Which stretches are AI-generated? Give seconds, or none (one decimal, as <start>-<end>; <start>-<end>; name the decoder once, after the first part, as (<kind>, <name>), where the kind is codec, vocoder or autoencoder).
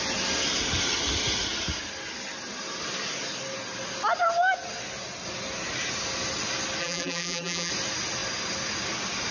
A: 6.8-7.7 (vocoder, BigVGAN v2)